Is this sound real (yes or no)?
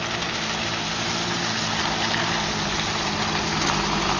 yes